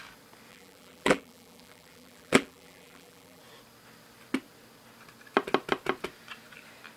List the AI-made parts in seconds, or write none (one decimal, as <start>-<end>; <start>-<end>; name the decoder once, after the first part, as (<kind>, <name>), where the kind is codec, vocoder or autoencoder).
0.5-3.4 (vocoder, BigVGAN v2)